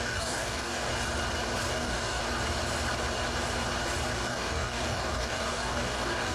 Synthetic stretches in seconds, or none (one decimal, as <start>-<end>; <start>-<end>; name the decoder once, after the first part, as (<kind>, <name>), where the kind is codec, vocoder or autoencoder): 0.0-0.9 (codec, DAC); 1.7-2.2; 4.1-6.3

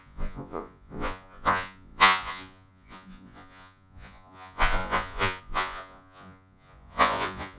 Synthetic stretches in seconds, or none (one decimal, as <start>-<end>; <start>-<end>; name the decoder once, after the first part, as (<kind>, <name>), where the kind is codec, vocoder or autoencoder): 0.0-7.6 (vocoder, Vocos)

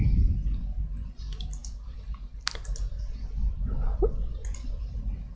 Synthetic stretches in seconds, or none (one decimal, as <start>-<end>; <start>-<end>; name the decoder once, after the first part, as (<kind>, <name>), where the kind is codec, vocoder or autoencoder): 1.6-4.8 (vocoder, BigVGAN v2)

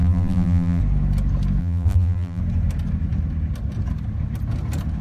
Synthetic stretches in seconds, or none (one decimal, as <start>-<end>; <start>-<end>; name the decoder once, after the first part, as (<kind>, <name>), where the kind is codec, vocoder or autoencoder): 0.0-0.8 (vocoder, BigVGAN v2); 1.6-2.4